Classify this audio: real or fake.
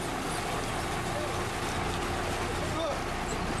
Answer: real